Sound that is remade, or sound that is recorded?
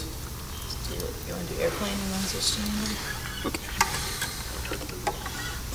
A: recorded